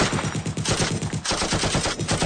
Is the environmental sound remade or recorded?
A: recorded